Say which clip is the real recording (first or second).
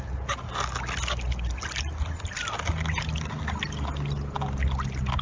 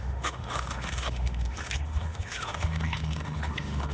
first